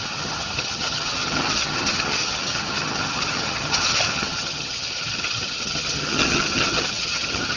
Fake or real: fake